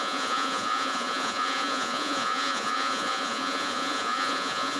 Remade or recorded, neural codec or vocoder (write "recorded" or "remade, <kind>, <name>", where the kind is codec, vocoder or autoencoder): remade, vocoder, Vocos